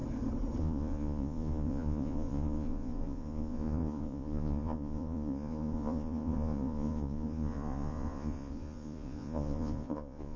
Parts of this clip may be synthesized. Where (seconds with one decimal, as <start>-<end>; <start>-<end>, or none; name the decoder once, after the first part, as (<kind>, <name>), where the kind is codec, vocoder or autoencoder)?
0.6-10.4 (vocoder, Vocos)